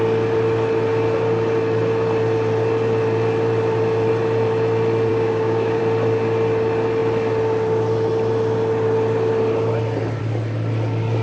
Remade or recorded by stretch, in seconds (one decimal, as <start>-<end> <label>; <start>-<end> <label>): 0.0-5.1 recorded; 5.1-5.8 remade; 5.8-11.2 recorded